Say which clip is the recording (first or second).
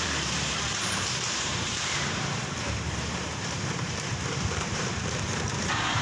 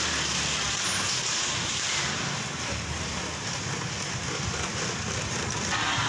second